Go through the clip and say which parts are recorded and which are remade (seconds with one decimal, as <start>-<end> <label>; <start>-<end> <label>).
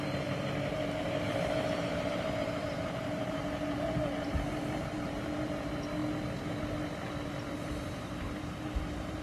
0.0-6.0 remade; 6.0-7.5 recorded; 7.5-9.2 remade